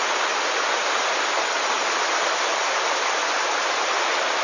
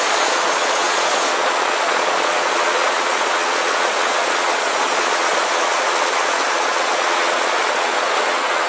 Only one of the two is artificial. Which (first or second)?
second